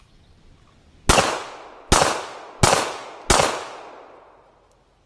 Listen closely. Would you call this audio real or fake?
real